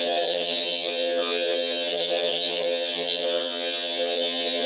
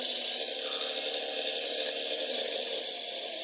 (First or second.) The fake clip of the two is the first